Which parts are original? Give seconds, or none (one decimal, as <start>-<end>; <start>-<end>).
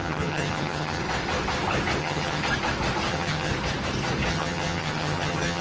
1.0-2.0; 2.4-3.1; 3.5-4.3